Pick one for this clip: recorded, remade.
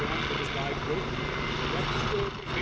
recorded